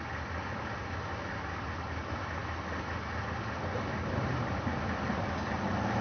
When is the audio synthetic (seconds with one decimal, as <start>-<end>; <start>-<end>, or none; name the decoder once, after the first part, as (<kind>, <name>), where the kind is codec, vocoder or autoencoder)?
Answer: none